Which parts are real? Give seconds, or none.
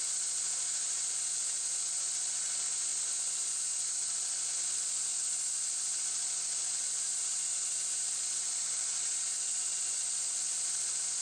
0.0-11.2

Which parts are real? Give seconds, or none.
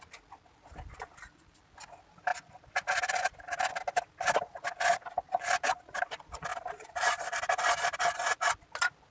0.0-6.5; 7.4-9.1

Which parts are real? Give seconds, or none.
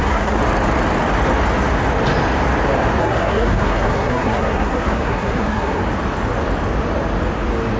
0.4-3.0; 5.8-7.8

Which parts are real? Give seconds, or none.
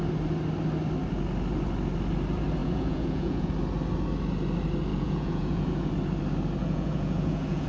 0.0-2.6; 3.5-4.9; 5.9-6.6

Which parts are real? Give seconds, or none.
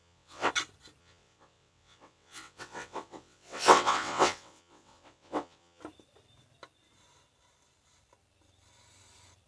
0.5-1.0; 5.8-9.5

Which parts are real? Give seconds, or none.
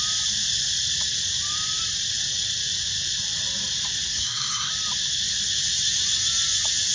0.0-4.1; 4.7-6.9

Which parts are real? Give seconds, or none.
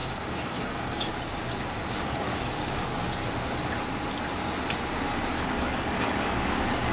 1.1-1.9; 3.2-5.3